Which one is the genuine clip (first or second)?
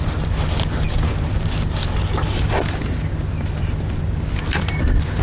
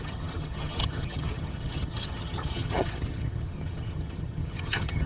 first